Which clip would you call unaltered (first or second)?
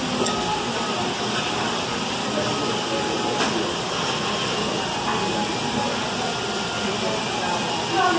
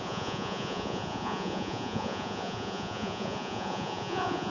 first